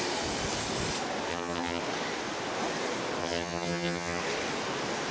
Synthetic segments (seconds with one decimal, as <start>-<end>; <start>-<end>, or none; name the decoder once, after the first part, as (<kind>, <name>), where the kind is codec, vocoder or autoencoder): 1.3-1.8 (vocoder, HiFi-GAN); 3.2-4.2

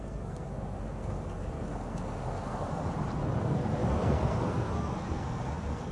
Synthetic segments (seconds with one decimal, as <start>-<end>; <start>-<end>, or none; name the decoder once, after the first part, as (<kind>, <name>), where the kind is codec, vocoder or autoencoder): 0.0-2.8 (codec, SNAC); 3.4-5.9

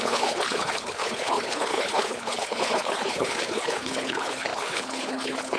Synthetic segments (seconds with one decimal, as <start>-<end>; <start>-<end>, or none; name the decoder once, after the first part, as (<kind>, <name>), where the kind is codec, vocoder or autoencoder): 0.0-5.6 (codec, HILCodec)

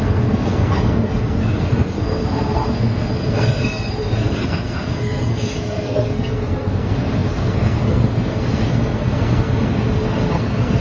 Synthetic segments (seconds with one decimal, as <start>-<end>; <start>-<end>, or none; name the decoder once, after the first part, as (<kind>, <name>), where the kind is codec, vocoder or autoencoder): 0.0-10.8 (codec, SNAC)

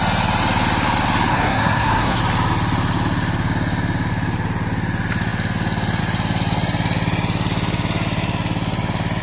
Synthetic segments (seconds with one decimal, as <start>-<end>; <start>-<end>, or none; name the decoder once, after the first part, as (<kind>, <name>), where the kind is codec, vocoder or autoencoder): 1.3-2.2 (codec, SNAC)

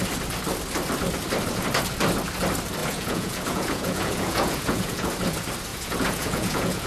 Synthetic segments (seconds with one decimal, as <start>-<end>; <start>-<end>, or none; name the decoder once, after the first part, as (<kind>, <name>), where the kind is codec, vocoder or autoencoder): 2.8-5.1 (vocoder, Vocos); 5.7-6.9

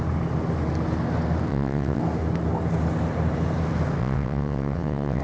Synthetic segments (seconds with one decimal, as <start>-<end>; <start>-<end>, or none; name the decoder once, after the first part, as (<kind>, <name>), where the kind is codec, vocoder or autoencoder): 1.5-2.0 (vocoder, WaveNeXt); 4.0-5.2